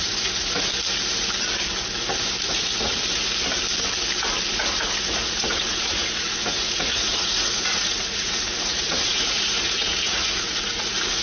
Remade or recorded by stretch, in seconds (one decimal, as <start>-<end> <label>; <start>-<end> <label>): 0.0-0.7 remade; 0.7-2.4 recorded; 2.4-2.9 remade; 2.9-4.5 recorded; 4.5-11.2 remade